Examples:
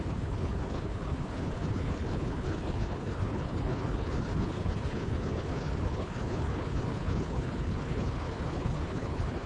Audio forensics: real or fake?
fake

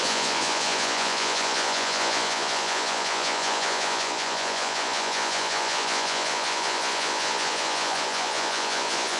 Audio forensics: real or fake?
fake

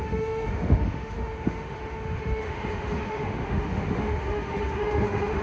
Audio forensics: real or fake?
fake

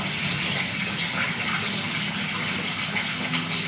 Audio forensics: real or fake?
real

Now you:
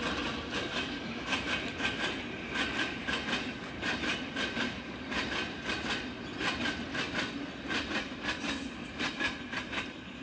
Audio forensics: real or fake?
real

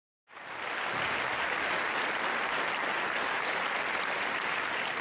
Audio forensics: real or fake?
real